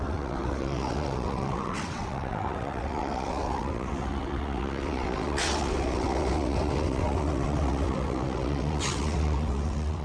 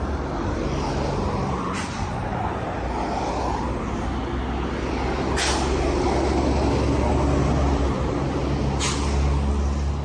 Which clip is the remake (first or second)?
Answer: first